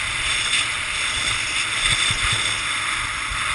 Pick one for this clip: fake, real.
real